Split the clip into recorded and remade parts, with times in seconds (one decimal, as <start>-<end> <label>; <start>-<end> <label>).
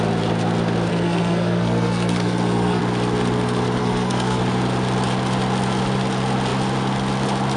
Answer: 0.0-0.9 recorded; 0.9-2.8 remade; 2.8-3.8 recorded; 3.8-4.4 remade; 4.4-7.6 recorded